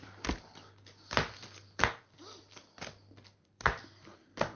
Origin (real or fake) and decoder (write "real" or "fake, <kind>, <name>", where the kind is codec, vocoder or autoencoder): real